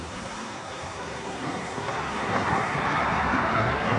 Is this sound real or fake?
fake